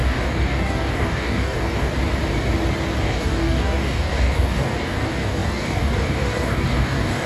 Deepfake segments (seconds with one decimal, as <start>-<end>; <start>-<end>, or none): 0.0-1.9; 3.0-7.3